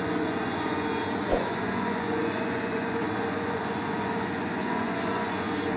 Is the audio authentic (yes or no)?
no